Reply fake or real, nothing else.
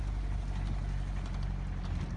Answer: real